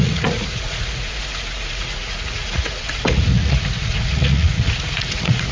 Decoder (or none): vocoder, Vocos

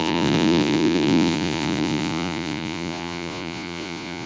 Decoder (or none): vocoder, Vocos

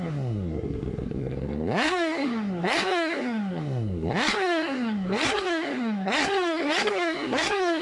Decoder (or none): codec, SNAC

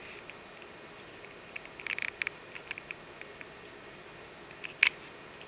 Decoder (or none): none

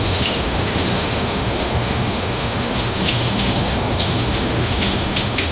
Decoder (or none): autoencoder, DAC-VAE